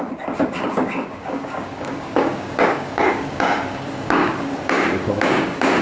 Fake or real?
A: fake